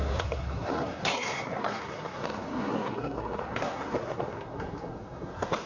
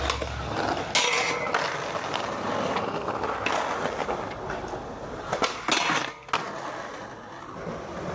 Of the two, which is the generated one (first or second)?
first